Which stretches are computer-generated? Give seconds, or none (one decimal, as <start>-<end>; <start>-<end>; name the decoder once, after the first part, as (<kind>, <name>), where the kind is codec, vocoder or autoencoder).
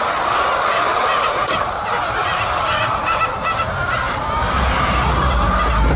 0.9-3.3 (vocoder, BigVGAN v2); 3.8-5.2